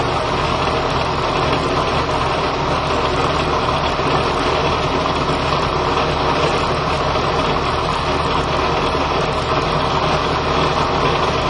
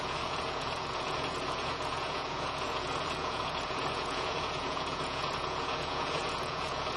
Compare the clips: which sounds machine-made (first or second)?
second